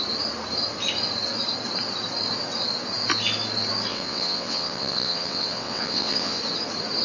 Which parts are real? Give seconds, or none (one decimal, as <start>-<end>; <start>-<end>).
0.0-3.9; 6.4-7.0